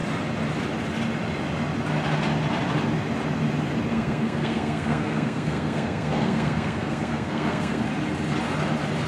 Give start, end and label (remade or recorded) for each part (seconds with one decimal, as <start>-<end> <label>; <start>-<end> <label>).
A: 0.0-3.9 recorded; 3.9-7.8 remade; 7.8-9.1 recorded